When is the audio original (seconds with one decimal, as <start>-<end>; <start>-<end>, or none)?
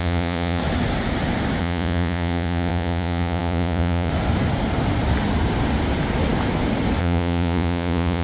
0.6-1.6; 4.1-7.0